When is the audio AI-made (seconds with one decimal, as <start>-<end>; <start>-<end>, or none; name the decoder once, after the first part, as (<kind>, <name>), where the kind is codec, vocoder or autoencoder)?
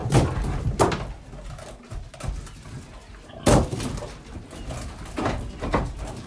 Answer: none